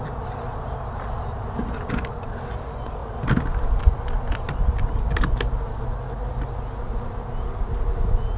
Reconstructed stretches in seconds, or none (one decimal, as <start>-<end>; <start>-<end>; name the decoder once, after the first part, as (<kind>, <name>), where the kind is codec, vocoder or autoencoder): none